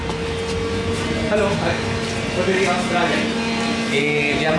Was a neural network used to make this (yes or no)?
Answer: no